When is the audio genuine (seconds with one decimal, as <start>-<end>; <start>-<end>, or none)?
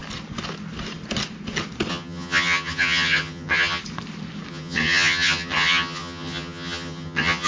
0.0-1.9; 3.8-4.5